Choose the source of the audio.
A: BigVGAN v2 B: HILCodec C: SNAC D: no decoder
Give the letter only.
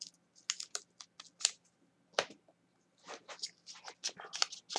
D